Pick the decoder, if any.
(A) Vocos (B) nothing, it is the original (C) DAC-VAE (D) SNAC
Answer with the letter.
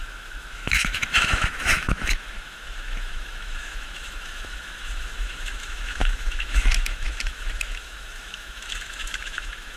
C